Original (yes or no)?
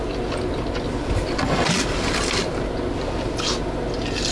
yes